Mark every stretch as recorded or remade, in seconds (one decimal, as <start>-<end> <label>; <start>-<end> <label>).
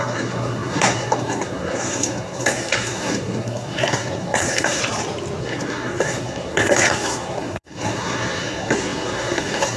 0.0-4.8 remade; 4.8-5.4 recorded; 5.4-9.8 remade